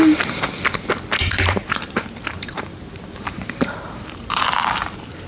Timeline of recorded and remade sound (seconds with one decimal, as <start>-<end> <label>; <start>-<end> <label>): 0.0-1.2 recorded; 1.2-4.4 remade; 4.4-5.3 recorded